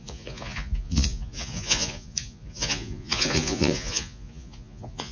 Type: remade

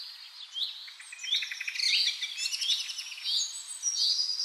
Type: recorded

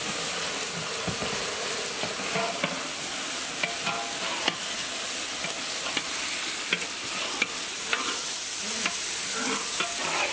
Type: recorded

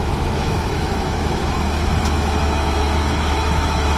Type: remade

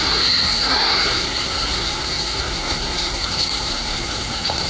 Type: remade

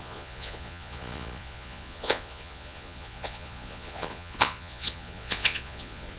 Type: remade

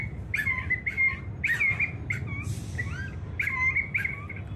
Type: recorded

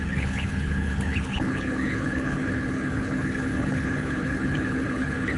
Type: remade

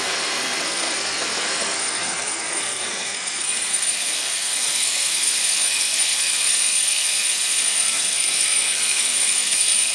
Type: remade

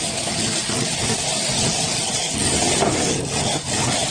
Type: recorded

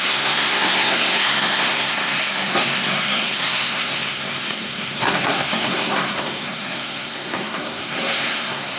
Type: remade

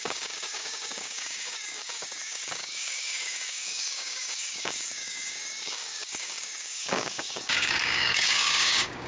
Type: remade